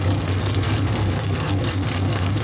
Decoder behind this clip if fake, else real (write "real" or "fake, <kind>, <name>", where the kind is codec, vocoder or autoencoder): fake, codec, SNAC